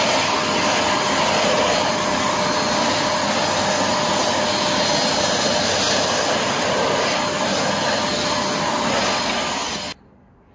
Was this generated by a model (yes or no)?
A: no